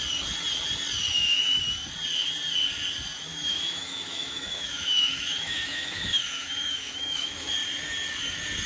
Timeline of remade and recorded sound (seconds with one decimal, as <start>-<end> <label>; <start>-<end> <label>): 0.0-1.1 recorded; 1.1-1.6 remade; 1.6-3.3 recorded; 3.3-7.5 remade; 7.5-8.7 recorded